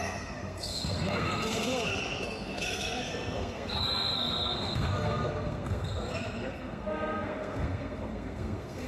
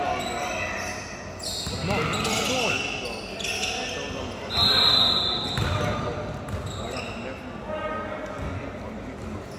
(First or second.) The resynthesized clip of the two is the first